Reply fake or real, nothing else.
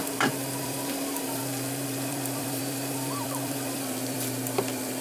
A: fake